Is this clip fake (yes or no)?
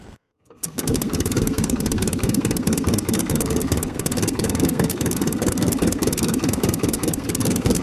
yes